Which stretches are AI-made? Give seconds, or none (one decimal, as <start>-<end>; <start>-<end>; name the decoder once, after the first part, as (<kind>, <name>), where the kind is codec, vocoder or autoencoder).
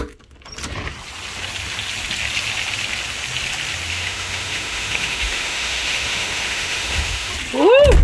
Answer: 3.9-7.3 (autoencoder, DAC-VAE)